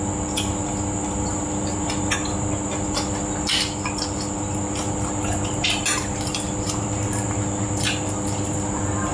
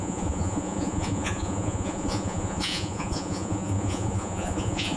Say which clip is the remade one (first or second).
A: second